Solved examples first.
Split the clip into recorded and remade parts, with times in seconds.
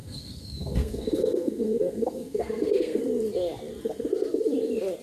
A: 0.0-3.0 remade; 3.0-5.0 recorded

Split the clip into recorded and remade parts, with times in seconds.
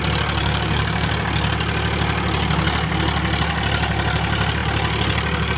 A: 0.0-0.4 recorded; 0.4-1.1 remade; 1.1-5.6 recorded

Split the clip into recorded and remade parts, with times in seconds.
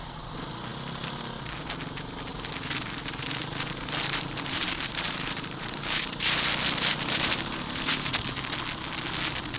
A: 0.0-2.3 recorded; 2.3-6.0 remade; 6.0-6.9 recorded; 6.9-8.1 remade; 8.1-9.6 recorded